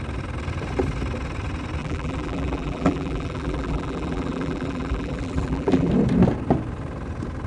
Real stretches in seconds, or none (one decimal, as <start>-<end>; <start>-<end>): 0.0-1.8; 5.9-7.5

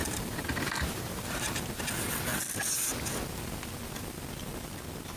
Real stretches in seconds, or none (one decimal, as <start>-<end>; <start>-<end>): 1.5-5.2

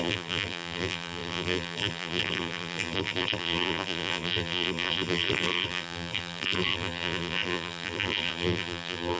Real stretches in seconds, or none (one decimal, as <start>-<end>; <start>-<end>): none